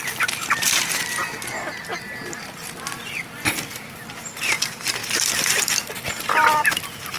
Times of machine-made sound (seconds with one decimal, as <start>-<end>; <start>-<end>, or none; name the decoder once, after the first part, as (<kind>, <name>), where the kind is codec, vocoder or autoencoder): 1.9-2.5 (vocoder, BigVGAN v2); 5.0-6.3

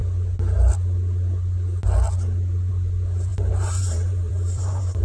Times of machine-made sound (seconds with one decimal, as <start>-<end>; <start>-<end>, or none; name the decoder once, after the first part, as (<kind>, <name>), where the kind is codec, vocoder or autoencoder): 3.3-5.0 (vocoder, BigVGAN v2)

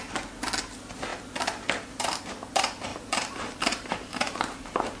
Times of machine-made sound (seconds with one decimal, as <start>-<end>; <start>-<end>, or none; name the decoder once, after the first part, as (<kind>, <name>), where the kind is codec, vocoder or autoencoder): 2.9-4.6 (vocoder, BigVGAN v2)

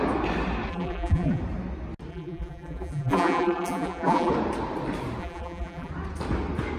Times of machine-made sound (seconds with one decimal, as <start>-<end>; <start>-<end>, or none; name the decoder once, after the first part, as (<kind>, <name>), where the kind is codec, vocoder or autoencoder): 0.7-1.4 (vocoder, BigVGAN v2); 2.1-4.3; 5.2-5.9

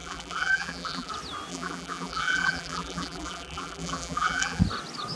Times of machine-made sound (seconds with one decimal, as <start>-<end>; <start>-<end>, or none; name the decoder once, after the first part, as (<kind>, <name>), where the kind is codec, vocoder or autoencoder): 0.0-1.1 (vocoder, BigVGAN v2); 1.5-4.6

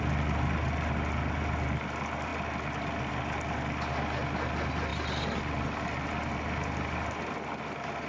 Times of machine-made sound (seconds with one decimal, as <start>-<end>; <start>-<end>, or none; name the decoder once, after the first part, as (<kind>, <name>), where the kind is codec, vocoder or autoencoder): 2.3-3.1 (vocoder, BigVGAN v2)

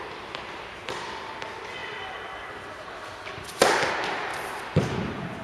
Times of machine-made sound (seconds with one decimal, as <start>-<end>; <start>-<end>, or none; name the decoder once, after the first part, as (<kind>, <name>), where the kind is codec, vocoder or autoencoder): 1.8-2.5 (vocoder, BigVGAN v2); 4.3-5.4